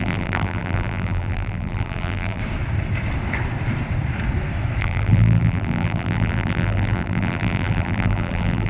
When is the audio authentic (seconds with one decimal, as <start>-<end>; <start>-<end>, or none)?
2.4-4.8